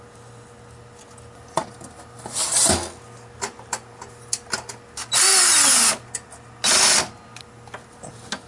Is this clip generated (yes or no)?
no